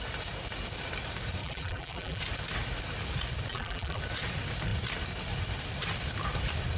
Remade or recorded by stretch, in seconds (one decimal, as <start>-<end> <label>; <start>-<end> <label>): 0.0-1.4 recorded; 1.4-2.2 remade; 2.2-3.5 recorded; 3.5-4.0 remade; 4.0-6.8 recorded